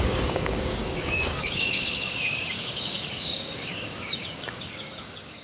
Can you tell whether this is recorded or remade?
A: remade